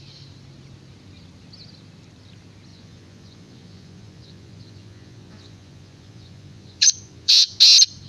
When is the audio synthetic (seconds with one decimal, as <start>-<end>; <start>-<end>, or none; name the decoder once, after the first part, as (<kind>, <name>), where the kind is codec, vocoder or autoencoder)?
2.7-7.6 (vocoder, Vocos)